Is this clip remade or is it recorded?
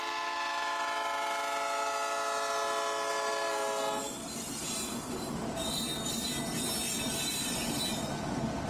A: recorded